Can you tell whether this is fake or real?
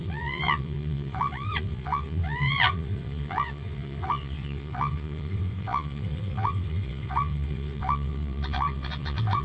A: fake